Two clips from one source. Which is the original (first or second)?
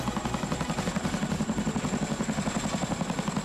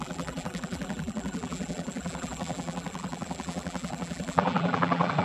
first